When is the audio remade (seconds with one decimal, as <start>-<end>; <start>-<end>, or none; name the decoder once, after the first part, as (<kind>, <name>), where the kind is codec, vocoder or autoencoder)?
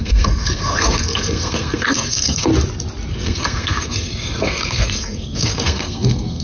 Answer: 0.0-2.5 (codec, SNAC); 3.1-6.4